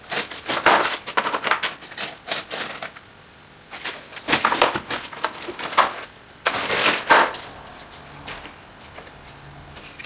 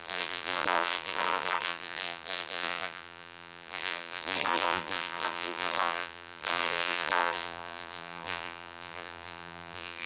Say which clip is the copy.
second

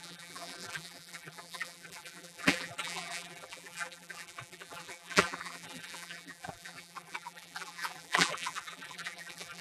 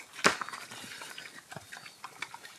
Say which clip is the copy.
first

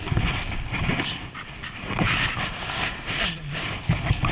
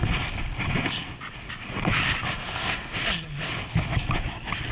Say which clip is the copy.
first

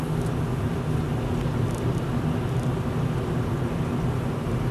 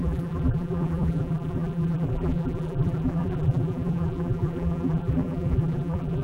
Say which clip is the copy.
second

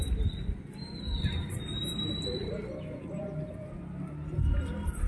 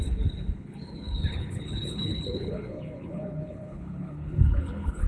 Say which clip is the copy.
second